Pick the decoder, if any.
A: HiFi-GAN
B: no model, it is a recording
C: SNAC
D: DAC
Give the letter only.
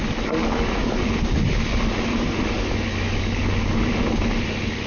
B